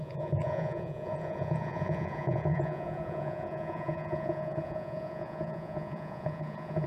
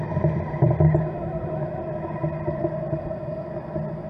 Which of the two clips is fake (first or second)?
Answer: first